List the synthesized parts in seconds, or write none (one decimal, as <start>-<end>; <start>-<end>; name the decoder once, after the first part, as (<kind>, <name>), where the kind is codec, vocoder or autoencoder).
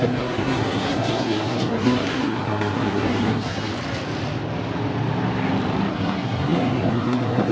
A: 0.0-3.7 (codec, SNAC); 5.9-7.5